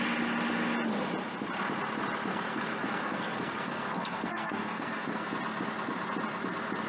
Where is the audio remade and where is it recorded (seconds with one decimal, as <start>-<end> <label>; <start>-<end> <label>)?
0.0-2.3 recorded; 2.3-5.3 remade; 5.3-6.9 recorded